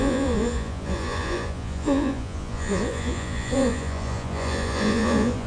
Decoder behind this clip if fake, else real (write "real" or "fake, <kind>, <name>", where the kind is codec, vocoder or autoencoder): fake, vocoder, Vocos